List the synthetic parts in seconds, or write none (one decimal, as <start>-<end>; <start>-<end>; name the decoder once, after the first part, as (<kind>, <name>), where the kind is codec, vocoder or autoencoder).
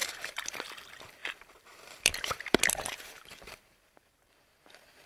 0.0-0.6 (vocoder, BigVGAN v2); 1.2-4.3